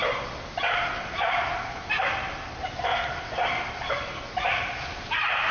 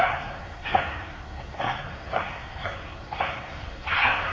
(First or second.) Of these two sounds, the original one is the first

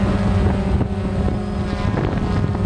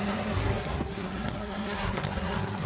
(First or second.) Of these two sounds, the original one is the first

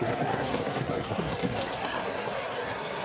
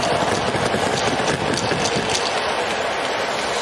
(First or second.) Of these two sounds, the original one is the second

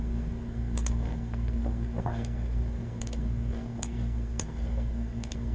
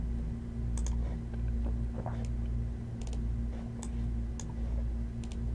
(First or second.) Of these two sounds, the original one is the second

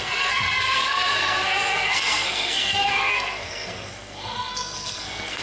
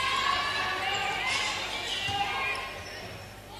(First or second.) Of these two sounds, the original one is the second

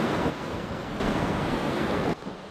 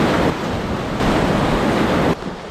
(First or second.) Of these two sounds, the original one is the second